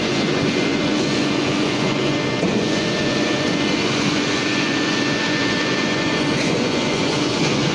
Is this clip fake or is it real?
fake